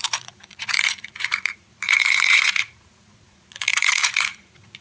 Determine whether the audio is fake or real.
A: fake